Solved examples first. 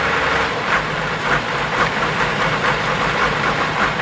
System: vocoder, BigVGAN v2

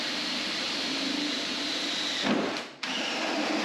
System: vocoder, BigVGAN v2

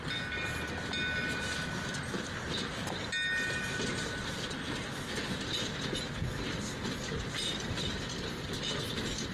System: none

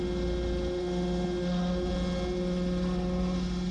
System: none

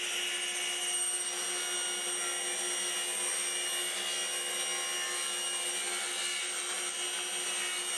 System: none